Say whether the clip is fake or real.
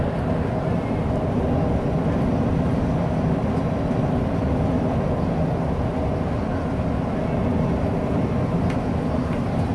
real